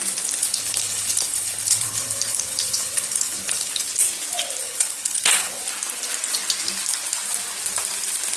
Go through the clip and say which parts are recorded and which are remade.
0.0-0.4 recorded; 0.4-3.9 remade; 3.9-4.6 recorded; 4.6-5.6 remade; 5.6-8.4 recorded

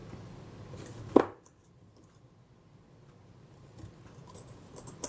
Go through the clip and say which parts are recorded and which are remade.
0.0-5.1 recorded

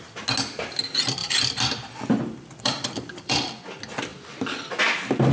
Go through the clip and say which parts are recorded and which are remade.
0.0-1.2 recorded; 1.2-3.5 remade; 3.5-4.1 recorded; 4.1-4.7 remade; 4.7-5.3 recorded

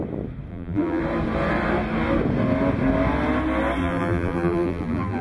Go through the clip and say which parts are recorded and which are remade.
0.0-0.5 recorded; 0.5-1.0 remade; 1.0-3.8 recorded; 3.8-5.2 remade

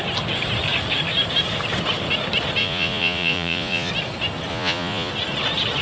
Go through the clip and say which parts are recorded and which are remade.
0.0-2.6 recorded; 2.6-3.9 remade; 3.9-4.5 recorded; 4.5-5.1 remade; 5.1-5.8 recorded